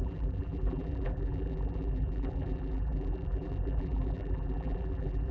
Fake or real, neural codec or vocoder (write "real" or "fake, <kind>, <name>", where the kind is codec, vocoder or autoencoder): fake, vocoder, BigVGAN v2